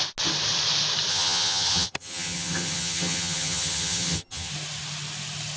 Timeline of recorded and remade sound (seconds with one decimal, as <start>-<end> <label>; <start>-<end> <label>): 0.0-1.1 recorded; 1.1-4.5 remade; 4.5-5.6 recorded